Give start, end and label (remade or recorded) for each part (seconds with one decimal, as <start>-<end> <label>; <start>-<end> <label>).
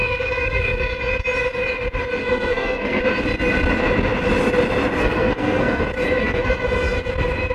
0.0-1.0 remade; 1.0-2.2 recorded; 2.2-3.0 remade; 3.0-5.0 recorded; 5.0-5.8 remade; 5.8-6.2 recorded; 6.2-7.1 remade; 7.1-7.5 recorded